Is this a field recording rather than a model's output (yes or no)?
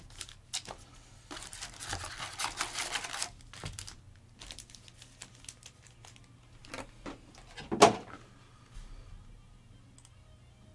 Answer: yes